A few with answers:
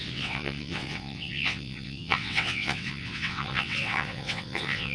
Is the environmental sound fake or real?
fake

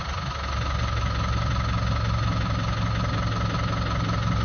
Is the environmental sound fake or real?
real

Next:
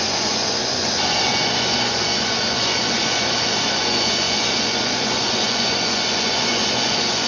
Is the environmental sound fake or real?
fake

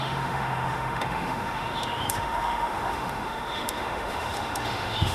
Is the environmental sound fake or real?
fake